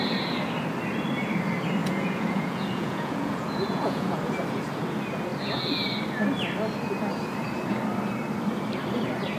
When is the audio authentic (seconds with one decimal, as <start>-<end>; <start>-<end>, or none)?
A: 0.0-1.8; 4.2-9.4

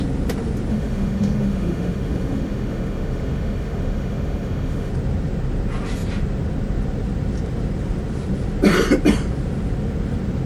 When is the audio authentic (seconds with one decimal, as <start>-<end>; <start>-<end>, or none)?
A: 0.0-0.7; 4.9-10.5

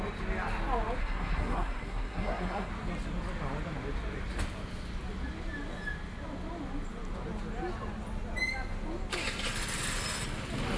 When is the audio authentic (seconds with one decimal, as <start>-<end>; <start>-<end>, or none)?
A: 0.0-1.0; 2.7-10.8

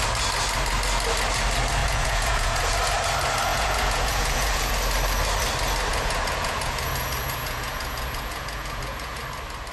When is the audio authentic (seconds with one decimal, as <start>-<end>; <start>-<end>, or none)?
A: 0.0-1.8; 2.8-3.5; 4.7-5.9; 9.2-9.7

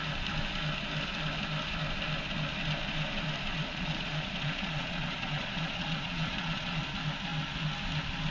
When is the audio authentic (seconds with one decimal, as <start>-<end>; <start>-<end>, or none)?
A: 0.0-3.5; 6.8-8.3

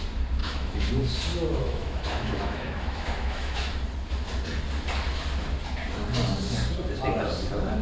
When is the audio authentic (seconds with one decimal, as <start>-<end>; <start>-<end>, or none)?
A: 0.0-0.4; 0.9-1.3; 3.7-7.8